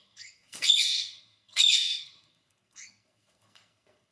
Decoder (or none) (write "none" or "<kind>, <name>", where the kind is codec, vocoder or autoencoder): codec, SNAC